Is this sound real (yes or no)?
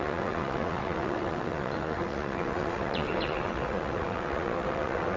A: no